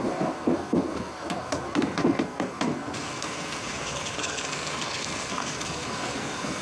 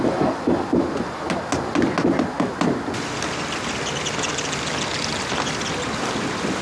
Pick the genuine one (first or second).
second